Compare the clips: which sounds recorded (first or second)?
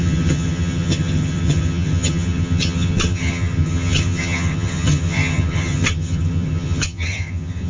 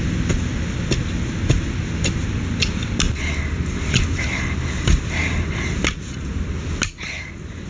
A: second